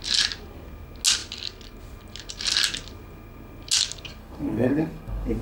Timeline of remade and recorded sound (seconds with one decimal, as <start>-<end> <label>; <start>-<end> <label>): 0.0-4.2 recorded; 4.2-5.4 remade